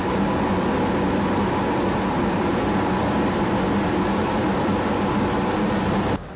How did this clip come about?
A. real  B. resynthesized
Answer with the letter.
A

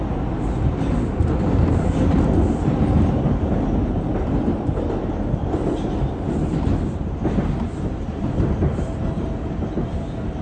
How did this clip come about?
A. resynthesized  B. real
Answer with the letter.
B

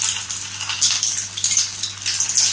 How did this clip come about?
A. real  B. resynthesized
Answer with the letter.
A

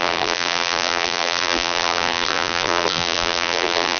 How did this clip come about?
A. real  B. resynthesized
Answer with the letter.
B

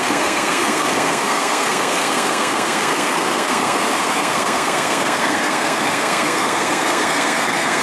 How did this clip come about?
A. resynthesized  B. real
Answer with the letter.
A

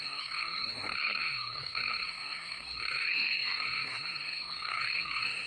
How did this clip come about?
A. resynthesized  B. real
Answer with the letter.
A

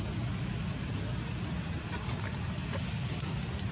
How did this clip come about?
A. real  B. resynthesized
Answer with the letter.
A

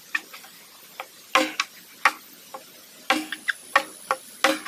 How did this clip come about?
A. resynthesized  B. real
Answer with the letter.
B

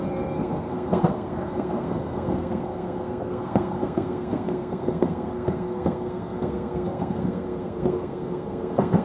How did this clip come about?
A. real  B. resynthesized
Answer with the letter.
B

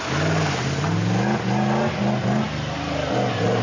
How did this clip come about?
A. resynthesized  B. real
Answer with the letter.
B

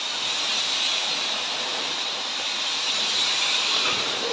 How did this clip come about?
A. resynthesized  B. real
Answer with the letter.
A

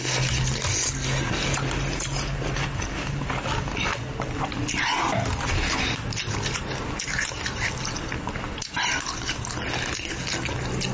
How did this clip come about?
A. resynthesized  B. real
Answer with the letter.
B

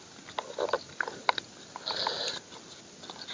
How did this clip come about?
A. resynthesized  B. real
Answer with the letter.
B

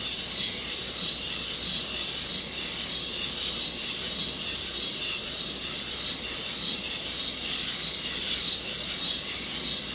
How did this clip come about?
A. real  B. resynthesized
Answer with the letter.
A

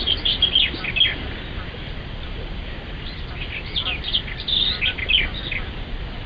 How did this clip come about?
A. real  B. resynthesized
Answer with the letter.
A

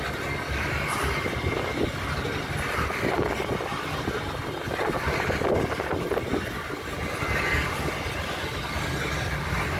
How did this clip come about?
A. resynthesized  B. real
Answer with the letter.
B